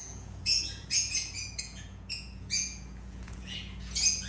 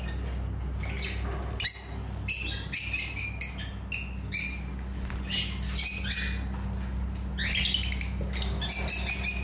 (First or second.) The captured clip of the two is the second